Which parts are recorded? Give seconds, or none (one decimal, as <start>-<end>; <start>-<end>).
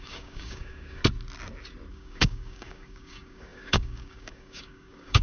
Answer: 1.0-1.9